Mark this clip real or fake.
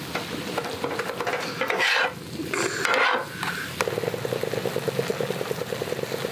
real